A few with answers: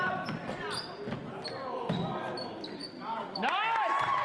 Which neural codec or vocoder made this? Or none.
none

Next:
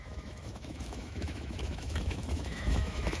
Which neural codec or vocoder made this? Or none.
autoencoder, DAC-VAE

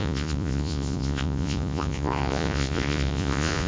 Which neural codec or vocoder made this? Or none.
vocoder, Vocos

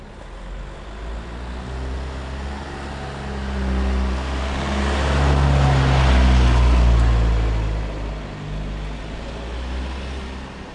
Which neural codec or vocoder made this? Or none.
none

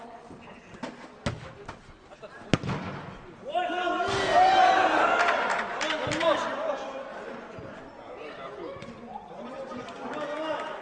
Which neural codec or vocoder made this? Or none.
none